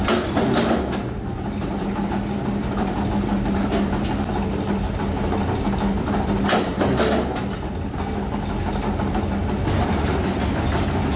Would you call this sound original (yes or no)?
yes